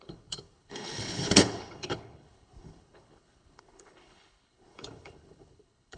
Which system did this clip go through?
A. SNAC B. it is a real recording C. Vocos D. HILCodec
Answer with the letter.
D